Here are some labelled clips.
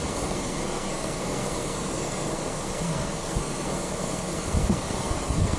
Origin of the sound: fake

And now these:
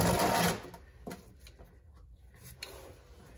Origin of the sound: real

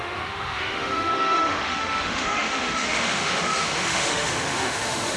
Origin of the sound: fake